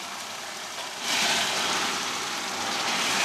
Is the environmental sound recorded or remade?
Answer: remade